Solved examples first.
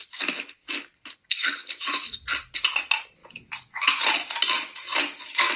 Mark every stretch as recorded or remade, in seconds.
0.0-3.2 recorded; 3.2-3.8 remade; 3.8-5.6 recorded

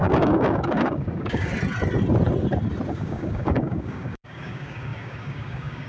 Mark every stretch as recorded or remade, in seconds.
0.0-1.5 remade; 1.5-2.9 recorded; 2.9-5.9 remade

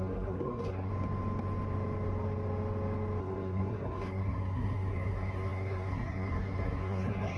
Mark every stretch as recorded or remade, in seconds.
0.0-0.9 remade; 0.9-3.2 recorded; 3.2-7.4 remade